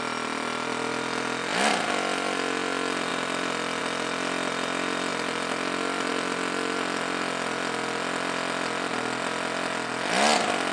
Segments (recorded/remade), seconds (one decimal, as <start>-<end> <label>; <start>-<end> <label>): 0.0-10.7 recorded